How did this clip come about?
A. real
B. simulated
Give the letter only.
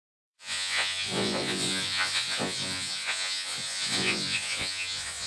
B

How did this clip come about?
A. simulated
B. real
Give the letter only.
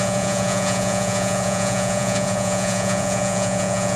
A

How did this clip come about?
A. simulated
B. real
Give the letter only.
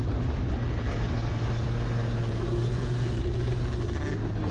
B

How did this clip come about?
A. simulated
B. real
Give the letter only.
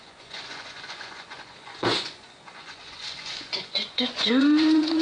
A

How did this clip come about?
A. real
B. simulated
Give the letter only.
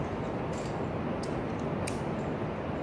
A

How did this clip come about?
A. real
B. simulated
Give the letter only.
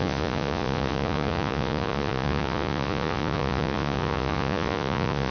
B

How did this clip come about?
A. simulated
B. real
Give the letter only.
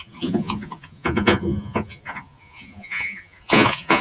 A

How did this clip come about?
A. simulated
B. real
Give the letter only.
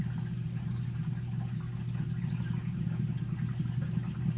B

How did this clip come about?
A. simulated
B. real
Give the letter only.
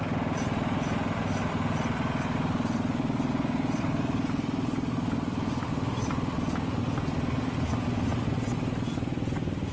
B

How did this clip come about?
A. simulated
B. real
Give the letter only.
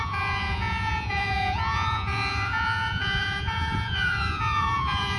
A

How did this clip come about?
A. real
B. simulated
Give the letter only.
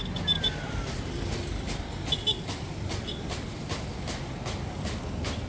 A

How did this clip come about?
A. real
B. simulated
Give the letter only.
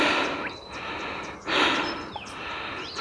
A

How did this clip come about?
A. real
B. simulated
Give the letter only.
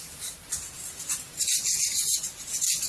A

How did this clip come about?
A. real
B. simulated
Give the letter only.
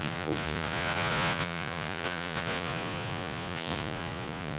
B